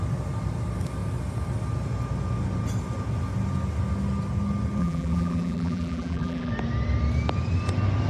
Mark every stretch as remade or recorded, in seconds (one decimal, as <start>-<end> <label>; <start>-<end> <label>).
0.0-4.8 recorded; 4.8-6.5 remade; 6.5-8.1 recorded

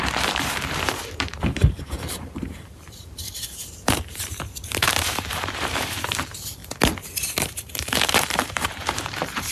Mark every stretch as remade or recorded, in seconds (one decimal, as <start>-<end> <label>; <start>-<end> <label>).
0.0-6.6 remade; 6.6-7.6 recorded; 7.6-9.5 remade

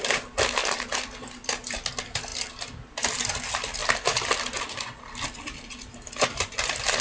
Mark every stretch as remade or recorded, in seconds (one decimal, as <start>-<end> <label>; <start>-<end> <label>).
0.0-0.6 recorded; 0.6-1.9 remade; 1.9-2.3 recorded; 2.3-3.1 remade; 3.1-3.8 recorded; 3.8-7.0 remade

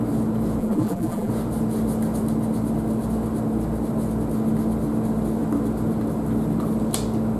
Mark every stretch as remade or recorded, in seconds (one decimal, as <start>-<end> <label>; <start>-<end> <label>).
0.0-0.6 recorded; 0.6-1.3 remade; 1.3-7.4 recorded